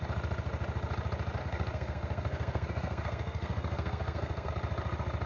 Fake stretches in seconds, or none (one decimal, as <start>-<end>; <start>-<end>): 1.4-4.5